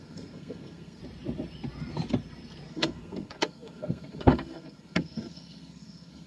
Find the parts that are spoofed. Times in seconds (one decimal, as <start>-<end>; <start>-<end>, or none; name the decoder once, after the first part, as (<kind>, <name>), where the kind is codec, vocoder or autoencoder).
0.0-1.0 (codec, SNAC); 2.7-6.3